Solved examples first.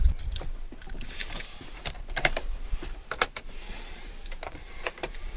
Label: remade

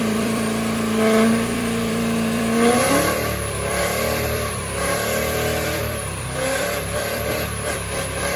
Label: remade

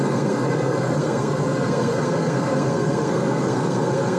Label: remade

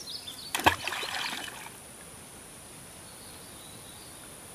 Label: recorded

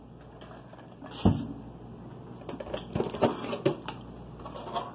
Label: recorded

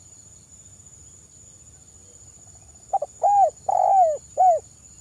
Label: recorded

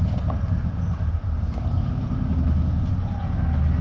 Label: recorded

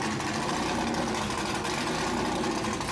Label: recorded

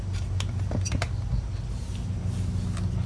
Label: recorded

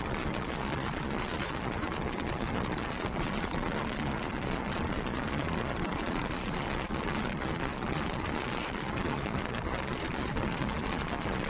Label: remade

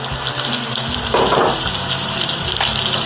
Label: recorded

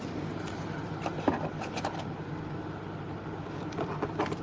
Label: recorded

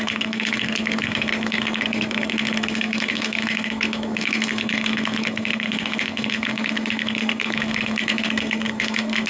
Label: remade